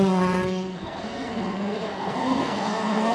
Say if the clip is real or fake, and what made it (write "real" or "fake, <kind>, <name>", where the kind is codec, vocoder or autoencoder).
fake, codec, SNAC